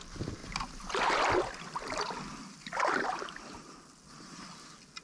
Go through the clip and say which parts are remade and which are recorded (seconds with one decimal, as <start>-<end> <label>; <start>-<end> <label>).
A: 0.0-2.3 recorded; 2.3-3.1 remade; 3.1-5.0 recorded